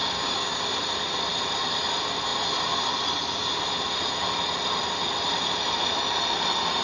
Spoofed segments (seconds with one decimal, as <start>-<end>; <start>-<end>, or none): 0.0-0.7